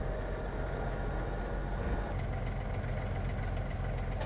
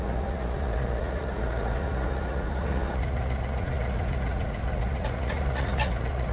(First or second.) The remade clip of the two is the second